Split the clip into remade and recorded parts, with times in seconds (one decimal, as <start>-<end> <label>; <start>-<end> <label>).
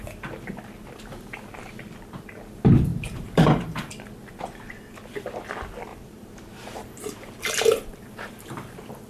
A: 0.0-2.9 recorded; 2.9-3.9 remade; 3.9-5.9 recorded; 5.9-8.3 remade; 8.3-9.1 recorded